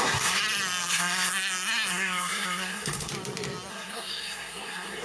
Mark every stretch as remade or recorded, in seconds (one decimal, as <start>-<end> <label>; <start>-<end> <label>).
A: 0.0-0.4 remade; 0.4-0.9 recorded; 0.9-1.3 remade; 1.3-1.9 recorded; 1.9-3.1 remade; 3.1-3.7 recorded; 3.7-5.0 remade